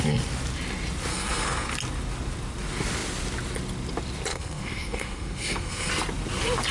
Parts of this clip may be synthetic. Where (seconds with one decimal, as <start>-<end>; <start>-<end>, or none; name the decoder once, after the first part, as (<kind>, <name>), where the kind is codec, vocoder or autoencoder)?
1.1-1.7 (codec, SNAC); 4.3-5.9